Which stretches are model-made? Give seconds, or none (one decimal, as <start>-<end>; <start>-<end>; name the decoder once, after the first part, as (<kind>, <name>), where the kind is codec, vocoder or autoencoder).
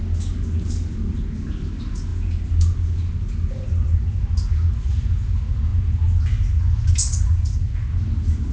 none